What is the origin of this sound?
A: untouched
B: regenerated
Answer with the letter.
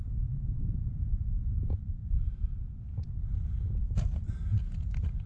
A